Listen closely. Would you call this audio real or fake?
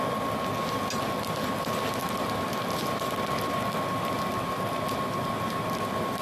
real